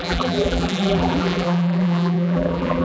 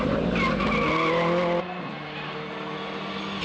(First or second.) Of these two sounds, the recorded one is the second